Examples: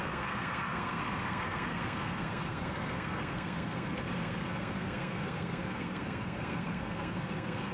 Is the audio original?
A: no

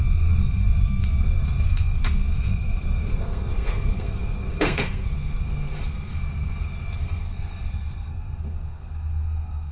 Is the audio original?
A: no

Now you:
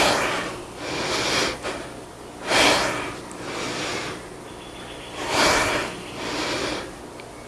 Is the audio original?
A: yes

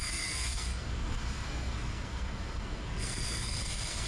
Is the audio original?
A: no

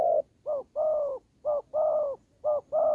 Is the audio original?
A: yes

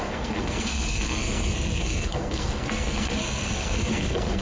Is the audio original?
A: no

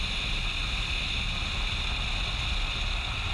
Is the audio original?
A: yes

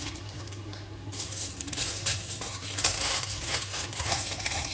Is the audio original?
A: no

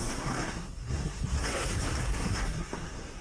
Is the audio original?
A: no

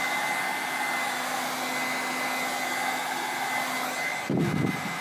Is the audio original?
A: yes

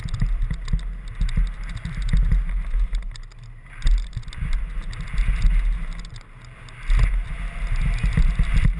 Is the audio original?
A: yes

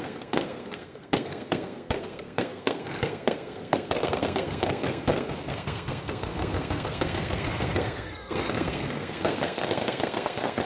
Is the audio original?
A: no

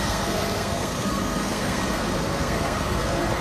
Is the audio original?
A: no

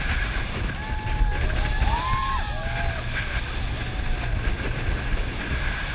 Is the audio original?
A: yes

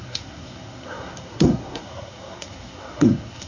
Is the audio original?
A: no